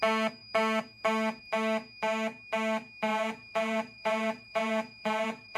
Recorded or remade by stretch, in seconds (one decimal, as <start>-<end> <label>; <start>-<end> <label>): 0.0-3.1 recorded; 3.1-5.6 remade